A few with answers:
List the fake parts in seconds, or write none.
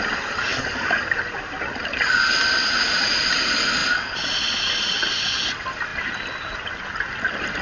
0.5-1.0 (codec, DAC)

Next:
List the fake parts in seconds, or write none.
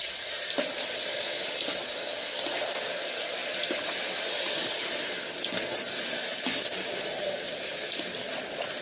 none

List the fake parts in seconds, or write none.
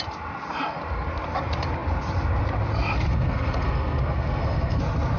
3.1-4.8 (codec, SNAC)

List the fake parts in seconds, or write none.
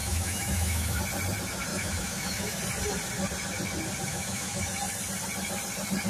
0.0-1.0 (autoencoder, DAC-VAE); 1.7-2.6; 4.1-4.6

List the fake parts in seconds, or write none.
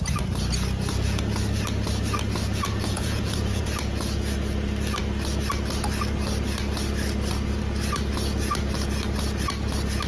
2.5-3.7 (vocoder, Vocos)